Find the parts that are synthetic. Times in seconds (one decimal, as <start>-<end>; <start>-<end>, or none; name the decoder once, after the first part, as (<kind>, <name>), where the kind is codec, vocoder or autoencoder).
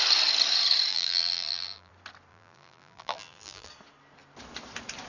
0.9-1.9 (vocoder, BigVGAN v2); 2.3-3.7